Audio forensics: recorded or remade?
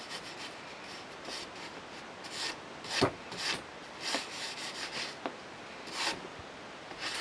recorded